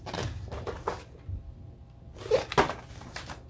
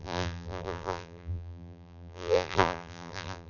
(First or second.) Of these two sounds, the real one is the first